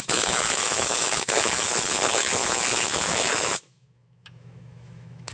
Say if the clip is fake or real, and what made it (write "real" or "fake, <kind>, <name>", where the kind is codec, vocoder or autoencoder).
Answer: fake, autoencoder, DAC-VAE